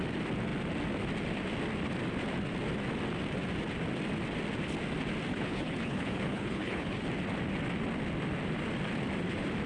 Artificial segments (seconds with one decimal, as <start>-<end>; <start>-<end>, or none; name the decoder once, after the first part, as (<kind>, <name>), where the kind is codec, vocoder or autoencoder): 5.3-7.0 (codec, HILCodec)